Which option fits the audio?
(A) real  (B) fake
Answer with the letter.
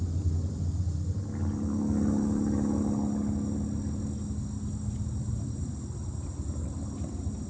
A